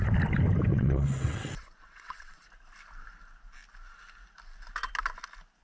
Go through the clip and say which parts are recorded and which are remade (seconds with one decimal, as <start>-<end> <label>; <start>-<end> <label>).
0.0-0.7 recorded; 0.7-2.5 remade; 2.5-5.6 recorded